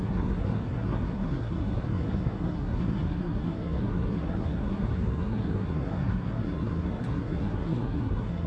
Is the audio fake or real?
fake